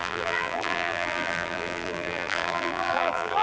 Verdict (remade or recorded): remade